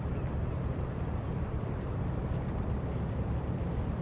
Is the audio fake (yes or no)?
yes